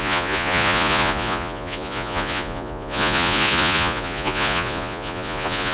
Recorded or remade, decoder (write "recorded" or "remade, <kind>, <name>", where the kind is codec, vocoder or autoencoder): remade, vocoder, Vocos